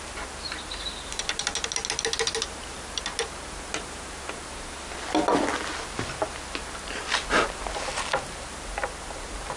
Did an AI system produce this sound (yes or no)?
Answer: no